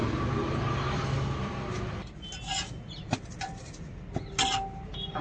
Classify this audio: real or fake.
real